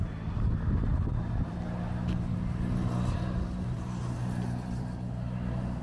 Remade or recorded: recorded